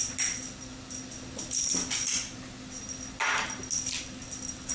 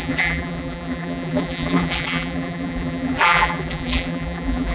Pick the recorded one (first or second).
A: first